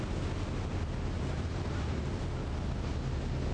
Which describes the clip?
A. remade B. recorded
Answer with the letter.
B